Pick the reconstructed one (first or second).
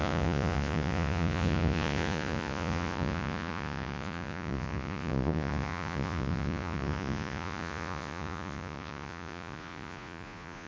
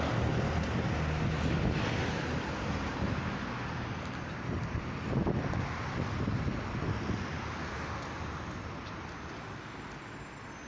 first